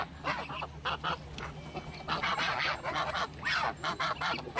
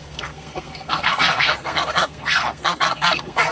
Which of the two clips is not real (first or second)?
second